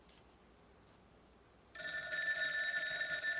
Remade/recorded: recorded